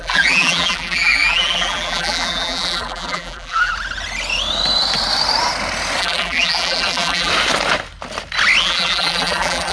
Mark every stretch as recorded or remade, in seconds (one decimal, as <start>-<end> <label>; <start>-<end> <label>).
0.0-3.7 remade; 3.7-6.0 recorded; 6.0-7.3 remade; 7.3-8.6 recorded; 8.6-9.7 remade